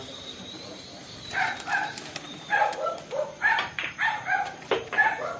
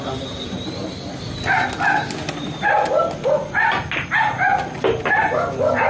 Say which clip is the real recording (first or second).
second